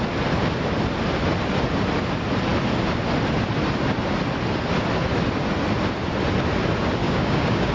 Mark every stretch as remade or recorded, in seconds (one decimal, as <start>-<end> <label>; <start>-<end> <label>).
0.0-7.0 recorded; 7.0-7.7 remade